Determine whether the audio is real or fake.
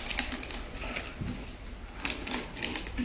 real